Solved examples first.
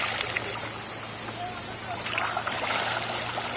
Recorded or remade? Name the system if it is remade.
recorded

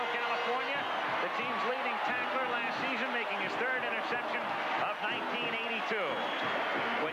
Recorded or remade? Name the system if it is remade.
recorded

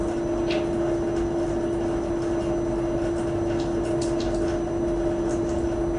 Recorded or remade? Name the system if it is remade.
recorded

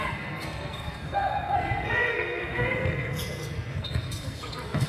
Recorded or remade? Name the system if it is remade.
remade, codec, SNAC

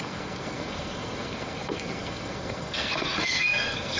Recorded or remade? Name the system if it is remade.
remade, codec, SNAC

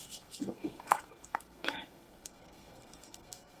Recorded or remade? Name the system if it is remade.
remade, codec, SNAC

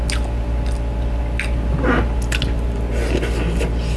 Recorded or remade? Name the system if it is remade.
recorded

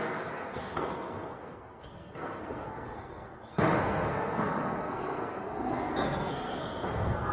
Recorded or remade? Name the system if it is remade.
remade, codec, SNAC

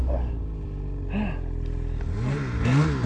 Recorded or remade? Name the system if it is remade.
recorded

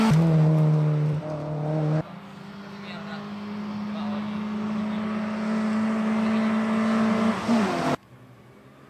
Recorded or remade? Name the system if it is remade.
recorded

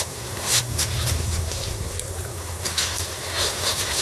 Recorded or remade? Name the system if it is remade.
remade, codec, SNAC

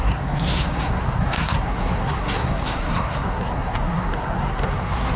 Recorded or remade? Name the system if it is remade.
remade, codec, SNAC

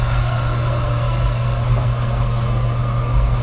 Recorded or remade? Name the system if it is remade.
remade, codec, SNAC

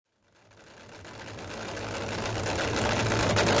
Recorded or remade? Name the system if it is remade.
recorded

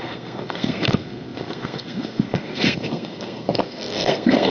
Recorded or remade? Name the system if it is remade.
remade, codec, SNAC